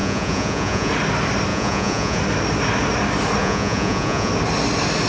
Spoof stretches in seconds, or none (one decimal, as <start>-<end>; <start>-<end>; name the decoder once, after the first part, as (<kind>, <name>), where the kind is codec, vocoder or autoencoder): 0.0-0.9 (vocoder, Vocos); 1.5-2.2; 3.4-4.3